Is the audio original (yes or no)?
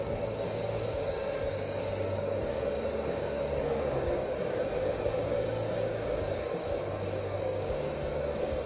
no